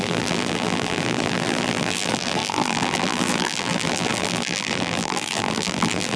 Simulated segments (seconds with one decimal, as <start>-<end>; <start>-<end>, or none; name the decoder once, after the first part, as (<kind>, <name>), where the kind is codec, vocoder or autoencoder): 0.0-6.2 (vocoder, BigVGAN v2)